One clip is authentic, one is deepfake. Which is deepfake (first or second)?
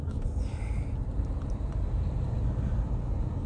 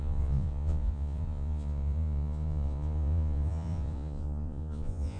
second